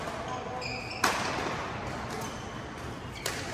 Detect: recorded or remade recorded